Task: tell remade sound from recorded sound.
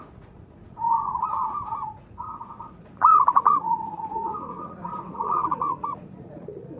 remade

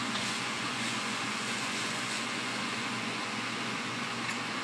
remade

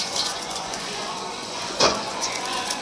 remade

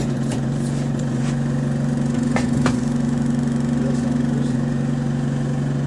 remade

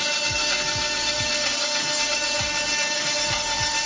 recorded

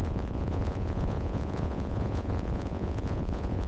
remade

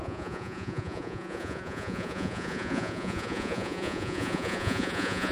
remade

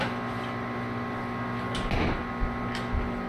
recorded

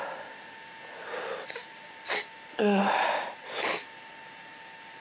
recorded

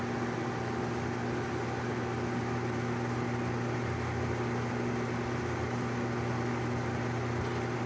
recorded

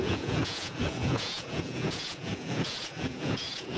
remade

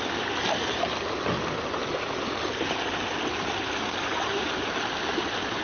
recorded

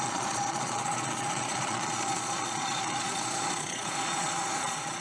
remade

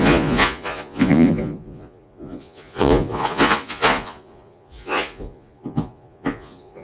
remade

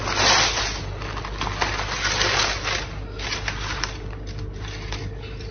recorded